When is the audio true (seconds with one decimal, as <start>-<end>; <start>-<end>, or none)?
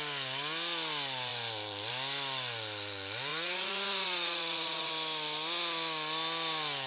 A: 0.0-3.3; 4.9-6.9